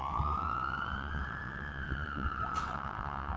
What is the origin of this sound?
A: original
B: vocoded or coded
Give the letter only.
B